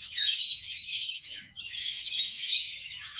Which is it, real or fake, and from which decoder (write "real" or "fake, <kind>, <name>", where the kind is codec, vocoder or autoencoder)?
fake, autoencoder, DAC-VAE